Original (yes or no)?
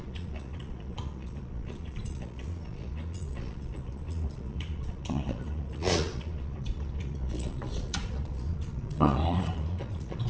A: no